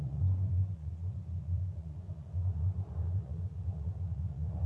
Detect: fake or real fake